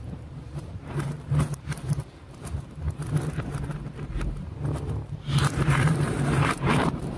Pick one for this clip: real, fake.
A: fake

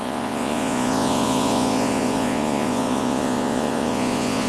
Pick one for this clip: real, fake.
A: fake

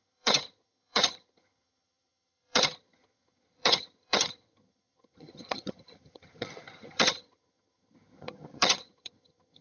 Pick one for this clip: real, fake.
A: fake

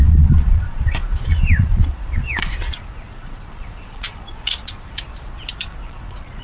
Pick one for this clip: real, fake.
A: fake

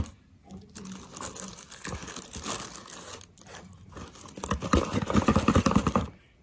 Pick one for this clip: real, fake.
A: real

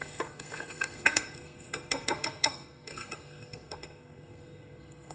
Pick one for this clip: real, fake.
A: fake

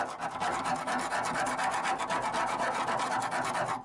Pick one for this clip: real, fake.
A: real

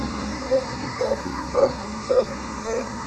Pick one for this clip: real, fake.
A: fake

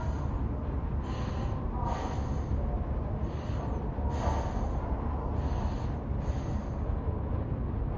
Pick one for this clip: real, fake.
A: real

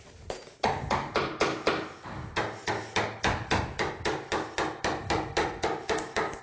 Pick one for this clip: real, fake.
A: real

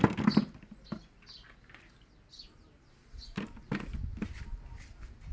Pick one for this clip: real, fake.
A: real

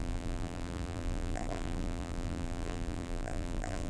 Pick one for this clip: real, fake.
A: fake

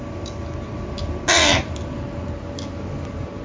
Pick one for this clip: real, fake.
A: real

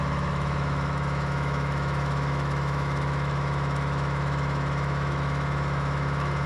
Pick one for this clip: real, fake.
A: fake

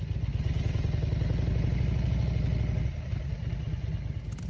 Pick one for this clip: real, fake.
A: real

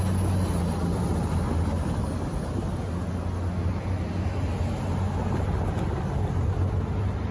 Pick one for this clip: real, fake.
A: real